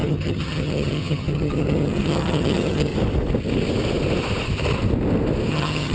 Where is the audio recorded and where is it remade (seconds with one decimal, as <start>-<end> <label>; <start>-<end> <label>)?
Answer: 0.0-2.9 remade; 2.9-5.5 recorded; 5.5-5.9 remade